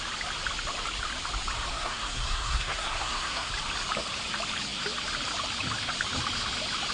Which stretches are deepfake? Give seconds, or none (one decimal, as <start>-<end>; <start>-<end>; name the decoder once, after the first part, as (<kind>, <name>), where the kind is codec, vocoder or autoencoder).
1.7-3.5 (codec, SNAC)